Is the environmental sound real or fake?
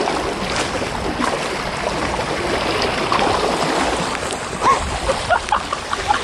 real